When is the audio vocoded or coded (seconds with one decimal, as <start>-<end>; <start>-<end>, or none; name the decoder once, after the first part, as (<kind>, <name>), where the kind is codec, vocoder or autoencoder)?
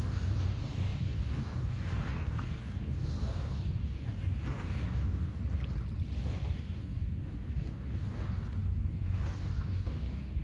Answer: 0.0-5.4 (codec, DAC); 6.2-10.4